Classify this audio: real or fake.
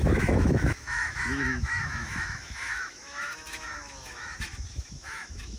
fake